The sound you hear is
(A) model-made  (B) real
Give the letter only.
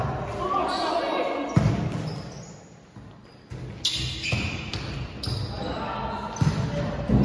B